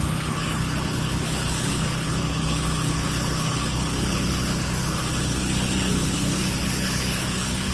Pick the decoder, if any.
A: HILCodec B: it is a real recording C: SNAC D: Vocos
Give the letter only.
A